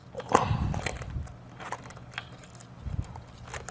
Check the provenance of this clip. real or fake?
real